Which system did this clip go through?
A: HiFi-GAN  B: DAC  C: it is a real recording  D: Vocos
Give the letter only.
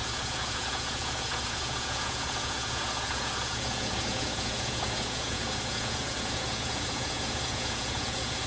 D